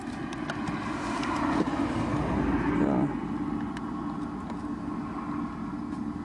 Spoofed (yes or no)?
no